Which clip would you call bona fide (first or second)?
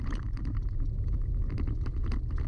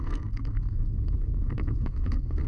first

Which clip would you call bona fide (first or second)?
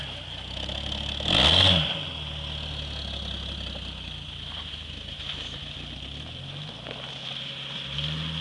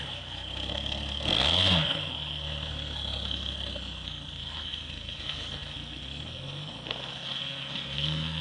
first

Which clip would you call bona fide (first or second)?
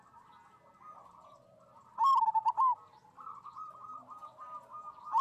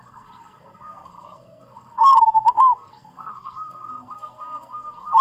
first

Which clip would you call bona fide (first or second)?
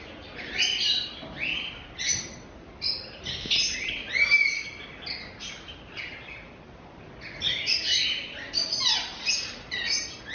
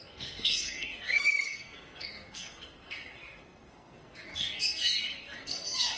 first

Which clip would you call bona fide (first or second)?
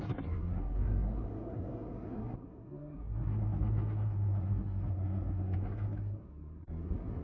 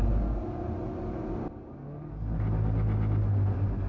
second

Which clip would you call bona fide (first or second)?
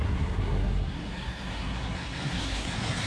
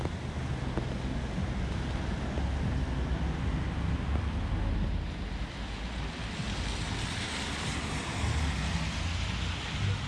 second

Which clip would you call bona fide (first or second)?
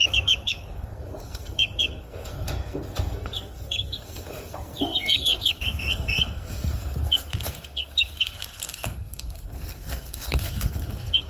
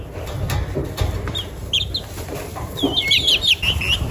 second